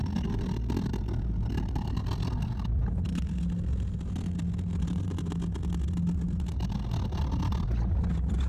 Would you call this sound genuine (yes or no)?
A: yes